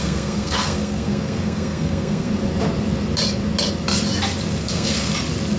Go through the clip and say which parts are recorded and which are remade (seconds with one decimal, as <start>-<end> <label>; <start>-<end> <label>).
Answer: 0.0-2.3 remade; 2.3-4.6 recorded; 4.6-5.1 remade; 5.1-5.6 recorded